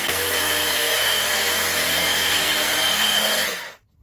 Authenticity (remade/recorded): remade